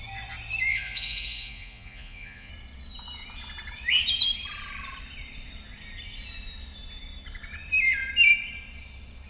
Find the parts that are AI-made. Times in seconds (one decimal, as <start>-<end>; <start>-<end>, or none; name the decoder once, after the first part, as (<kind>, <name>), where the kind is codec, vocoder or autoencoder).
0.7-2.5 (vocoder, Vocos)